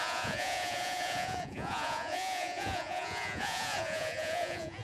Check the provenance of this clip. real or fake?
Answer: fake